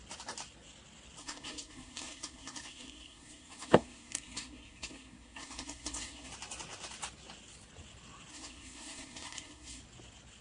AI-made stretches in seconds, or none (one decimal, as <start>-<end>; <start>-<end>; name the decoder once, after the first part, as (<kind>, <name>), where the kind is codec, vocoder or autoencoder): 1.2-6.3 (codec, SNAC); 8.3-9.8